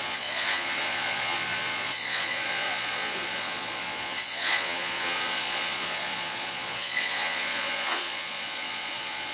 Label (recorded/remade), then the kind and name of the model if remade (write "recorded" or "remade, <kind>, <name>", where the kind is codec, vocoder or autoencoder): remade, vocoder, Vocos